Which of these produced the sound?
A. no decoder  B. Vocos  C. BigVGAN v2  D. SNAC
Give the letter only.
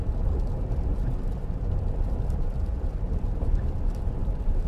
A